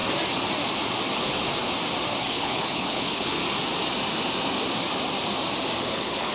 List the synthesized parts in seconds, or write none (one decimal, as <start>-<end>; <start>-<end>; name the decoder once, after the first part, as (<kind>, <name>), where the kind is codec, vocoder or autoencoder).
2.2-3.4 (codec, HILCodec); 5.8-6.3